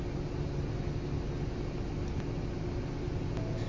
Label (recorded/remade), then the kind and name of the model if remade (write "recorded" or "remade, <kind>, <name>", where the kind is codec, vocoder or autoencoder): recorded